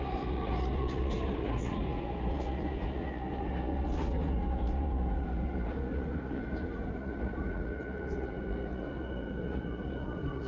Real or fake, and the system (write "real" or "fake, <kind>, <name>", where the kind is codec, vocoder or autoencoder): fake, vocoder, Vocos